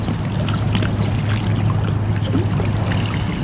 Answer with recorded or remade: recorded